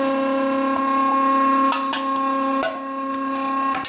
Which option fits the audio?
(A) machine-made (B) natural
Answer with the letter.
B